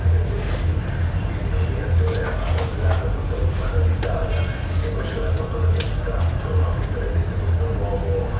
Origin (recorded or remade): recorded